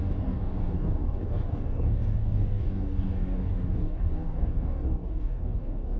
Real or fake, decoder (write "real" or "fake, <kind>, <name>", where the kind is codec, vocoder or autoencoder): fake, codec, DAC